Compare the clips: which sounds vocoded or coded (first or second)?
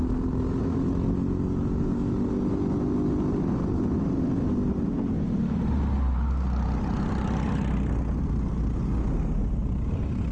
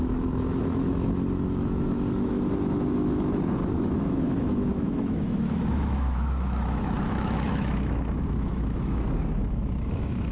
second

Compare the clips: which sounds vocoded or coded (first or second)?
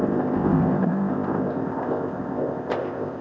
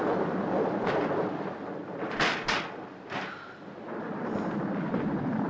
first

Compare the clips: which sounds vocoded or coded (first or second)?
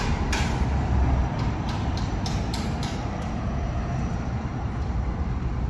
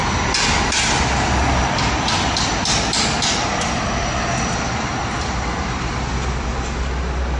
first